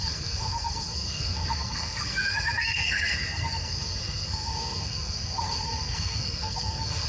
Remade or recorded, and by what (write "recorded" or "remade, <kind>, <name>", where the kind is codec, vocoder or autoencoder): remade, codec, SNAC